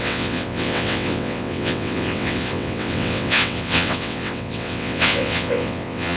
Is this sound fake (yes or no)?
yes